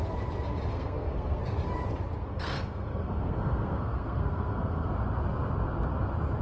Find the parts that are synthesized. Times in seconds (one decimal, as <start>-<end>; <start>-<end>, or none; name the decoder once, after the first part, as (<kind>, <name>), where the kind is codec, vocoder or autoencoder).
0.7-1.4 (codec, SNAC); 2.2-4.9

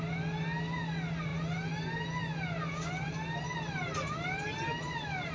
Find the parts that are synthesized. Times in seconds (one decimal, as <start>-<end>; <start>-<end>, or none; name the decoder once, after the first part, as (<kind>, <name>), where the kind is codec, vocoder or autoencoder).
none

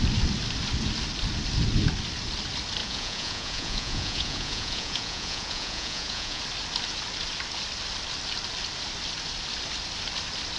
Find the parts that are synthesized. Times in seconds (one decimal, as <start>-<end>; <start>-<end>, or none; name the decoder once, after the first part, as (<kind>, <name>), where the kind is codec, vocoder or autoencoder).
2.8-6.4 (vocoder, Vocos)

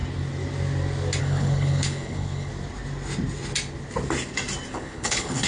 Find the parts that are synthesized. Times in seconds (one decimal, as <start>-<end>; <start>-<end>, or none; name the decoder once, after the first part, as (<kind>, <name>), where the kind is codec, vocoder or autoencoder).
1.2-2.5 (codec, HILCodec); 4.7-5.5

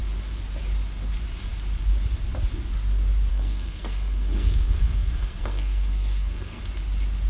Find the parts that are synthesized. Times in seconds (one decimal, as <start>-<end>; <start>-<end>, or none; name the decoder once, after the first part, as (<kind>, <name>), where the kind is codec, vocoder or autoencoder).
3.3-6.6 (codec, SNAC)